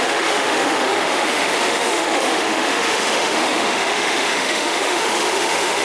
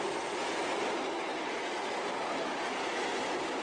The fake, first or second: first